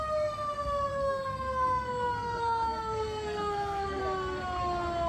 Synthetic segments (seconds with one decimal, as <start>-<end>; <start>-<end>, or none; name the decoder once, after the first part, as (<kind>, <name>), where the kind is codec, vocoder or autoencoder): 0.9-4.0 (codec, SNAC)